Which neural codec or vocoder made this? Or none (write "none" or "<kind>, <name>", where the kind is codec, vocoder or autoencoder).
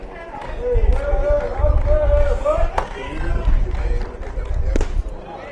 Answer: none